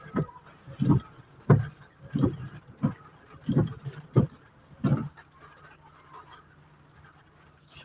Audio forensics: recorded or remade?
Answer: recorded